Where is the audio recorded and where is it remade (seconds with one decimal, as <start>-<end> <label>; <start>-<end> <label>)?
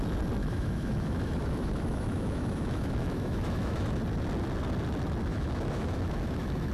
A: 0.0-0.4 recorded; 0.4-4.0 remade; 4.0-5.3 recorded; 5.3-6.7 remade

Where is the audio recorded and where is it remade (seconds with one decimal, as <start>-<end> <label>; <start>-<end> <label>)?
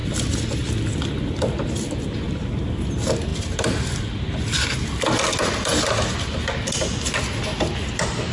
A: 0.0-2.5 remade; 2.5-3.3 recorded; 3.3-4.7 remade; 4.7-8.3 recorded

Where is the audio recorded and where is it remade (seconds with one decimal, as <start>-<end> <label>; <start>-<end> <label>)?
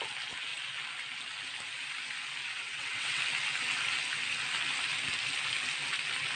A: 0.0-2.4 recorded; 2.4-3.2 remade; 3.2-6.4 recorded